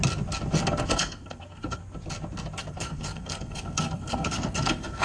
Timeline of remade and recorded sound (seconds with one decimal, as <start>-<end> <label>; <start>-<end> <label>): 0.0-0.9 recorded; 0.9-1.8 remade; 1.8-2.6 recorded; 2.6-5.0 remade